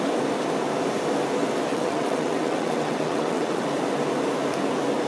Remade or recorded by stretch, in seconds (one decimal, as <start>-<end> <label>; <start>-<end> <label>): 0.0-1.7 recorded; 1.7-3.6 remade; 3.6-5.1 recorded